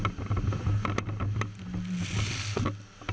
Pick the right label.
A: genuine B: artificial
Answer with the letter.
A